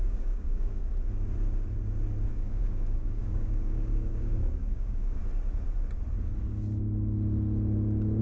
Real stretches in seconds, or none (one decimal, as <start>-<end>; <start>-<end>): 0.8-2.3; 5.2-8.2